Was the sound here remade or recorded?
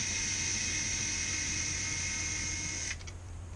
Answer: recorded